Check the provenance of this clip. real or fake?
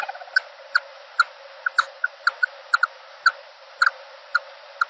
real